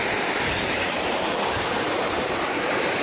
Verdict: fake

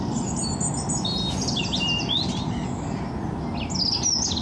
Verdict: real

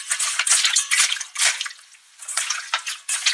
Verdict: fake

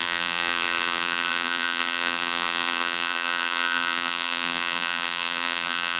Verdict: fake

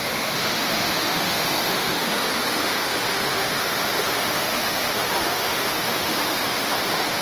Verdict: fake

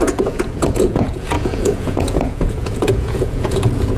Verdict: fake